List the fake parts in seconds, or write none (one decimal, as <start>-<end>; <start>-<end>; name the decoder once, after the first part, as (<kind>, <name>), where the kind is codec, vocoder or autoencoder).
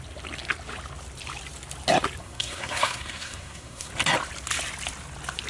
2.2-3.9 (codec, SNAC)